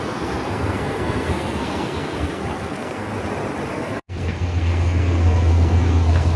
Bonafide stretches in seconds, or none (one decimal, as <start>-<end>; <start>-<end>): 3.1-3.7